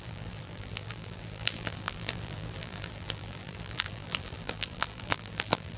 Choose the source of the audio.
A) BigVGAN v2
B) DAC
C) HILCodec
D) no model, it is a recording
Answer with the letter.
A